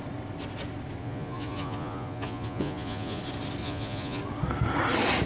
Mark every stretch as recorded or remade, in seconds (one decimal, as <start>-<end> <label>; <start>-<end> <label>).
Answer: 0.0-1.0 recorded; 1.0-3.2 remade; 3.2-3.6 recorded; 3.6-4.2 remade; 4.2-5.3 recorded